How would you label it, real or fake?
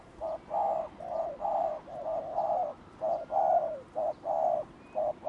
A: fake